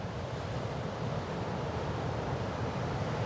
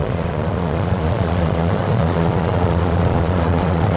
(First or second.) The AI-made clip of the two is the second